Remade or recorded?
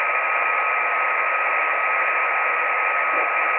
recorded